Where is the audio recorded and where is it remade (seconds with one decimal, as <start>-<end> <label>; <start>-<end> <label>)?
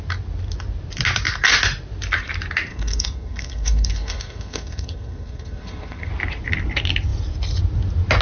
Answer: 0.0-2.7 recorded; 2.7-6.1 remade; 6.1-8.2 recorded